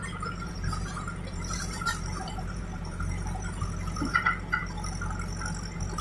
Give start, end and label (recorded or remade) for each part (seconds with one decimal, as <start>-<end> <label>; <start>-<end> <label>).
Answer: 0.0-3.6 remade; 3.6-6.0 recorded